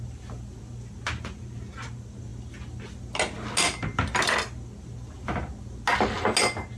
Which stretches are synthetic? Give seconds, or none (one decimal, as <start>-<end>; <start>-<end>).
none